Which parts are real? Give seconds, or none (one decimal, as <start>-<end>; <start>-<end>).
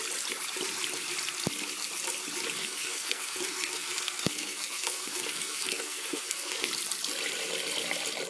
0.0-2.6; 6.7-8.3